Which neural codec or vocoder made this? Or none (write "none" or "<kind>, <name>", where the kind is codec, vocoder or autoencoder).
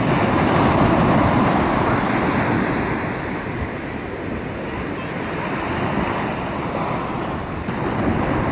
none